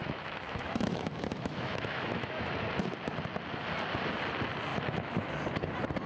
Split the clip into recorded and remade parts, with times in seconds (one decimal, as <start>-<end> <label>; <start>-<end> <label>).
0.0-2.5 remade; 2.5-4.7 recorded; 4.7-5.3 remade; 5.3-6.1 recorded